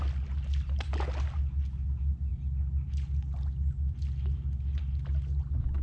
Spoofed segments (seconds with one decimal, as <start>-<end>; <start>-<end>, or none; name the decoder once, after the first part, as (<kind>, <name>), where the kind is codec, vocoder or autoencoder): none